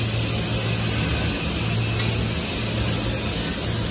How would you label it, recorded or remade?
recorded